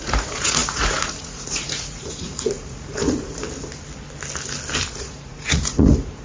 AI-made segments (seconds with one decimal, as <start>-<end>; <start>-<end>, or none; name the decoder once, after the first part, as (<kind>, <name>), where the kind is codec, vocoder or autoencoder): 0.0-3.4 (vocoder, Vocos); 5.0-6.2